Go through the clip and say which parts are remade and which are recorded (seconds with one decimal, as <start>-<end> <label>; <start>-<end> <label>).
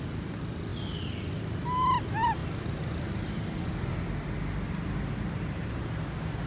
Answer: 0.0-6.5 recorded